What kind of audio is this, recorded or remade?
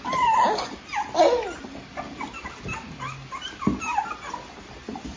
recorded